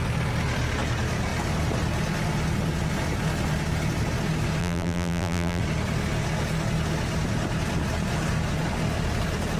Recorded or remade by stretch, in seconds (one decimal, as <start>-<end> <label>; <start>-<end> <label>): 0.0-4.6 recorded; 4.6-5.6 remade; 5.6-9.6 recorded